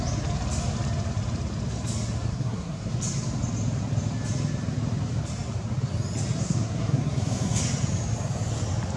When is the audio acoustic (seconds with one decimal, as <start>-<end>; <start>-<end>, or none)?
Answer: 0.0-2.3; 2.9-6.4; 7.6-9.0